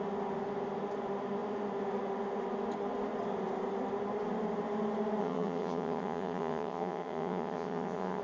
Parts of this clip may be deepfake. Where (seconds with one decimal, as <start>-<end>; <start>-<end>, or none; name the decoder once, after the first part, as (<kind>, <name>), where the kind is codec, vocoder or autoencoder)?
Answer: 5.2-8.2 (vocoder, HiFi-GAN)